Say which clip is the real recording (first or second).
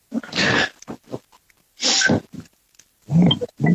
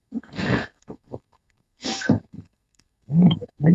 first